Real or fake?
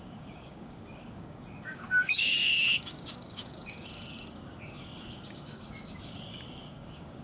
fake